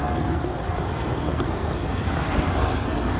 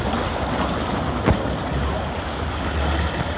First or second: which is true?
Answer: second